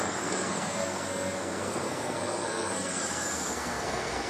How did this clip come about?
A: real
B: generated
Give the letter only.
B